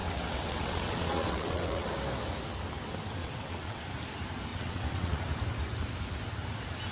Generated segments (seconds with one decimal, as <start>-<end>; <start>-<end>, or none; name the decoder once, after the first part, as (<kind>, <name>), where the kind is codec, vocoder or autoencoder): 0.0-1.9 (vocoder, WaveNeXt); 3.2-3.8; 4.5-5.2